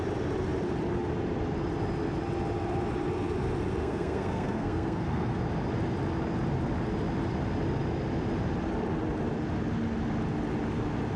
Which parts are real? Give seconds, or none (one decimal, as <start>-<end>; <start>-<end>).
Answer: 0.0-3.8; 5.4-11.2